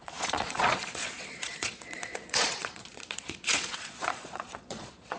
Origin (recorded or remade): remade